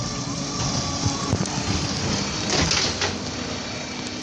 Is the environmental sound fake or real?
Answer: real